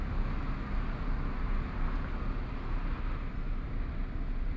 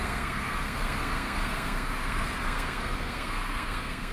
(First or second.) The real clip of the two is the first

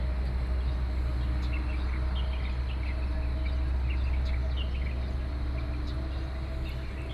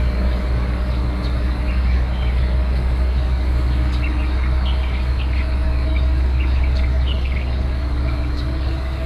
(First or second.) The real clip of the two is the first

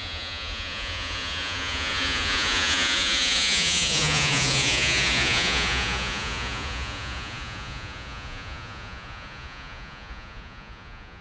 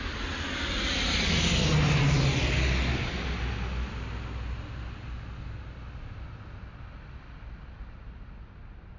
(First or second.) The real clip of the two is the second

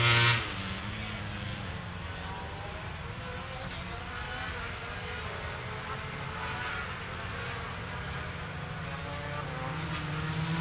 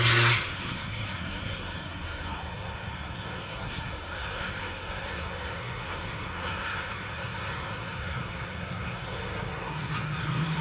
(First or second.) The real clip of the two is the first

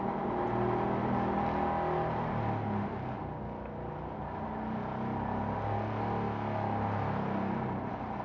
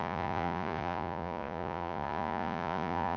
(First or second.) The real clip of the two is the first